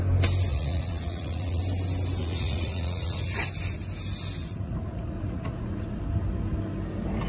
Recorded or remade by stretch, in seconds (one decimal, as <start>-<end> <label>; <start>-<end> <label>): 0.0-0.5 recorded; 0.5-1.6 remade; 1.6-2.2 recorded; 2.2-3.4 remade; 3.4-4.4 recorded; 4.4-6.0 remade; 6.0-7.3 recorded